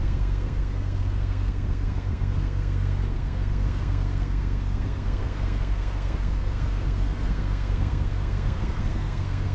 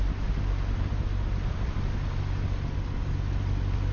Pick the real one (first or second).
second